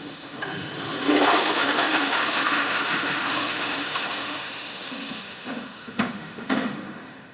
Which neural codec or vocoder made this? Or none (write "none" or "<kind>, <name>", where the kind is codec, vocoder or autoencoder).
autoencoder, DAC-VAE